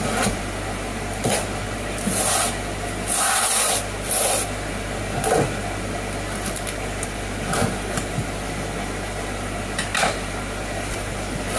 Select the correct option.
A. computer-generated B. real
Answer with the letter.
B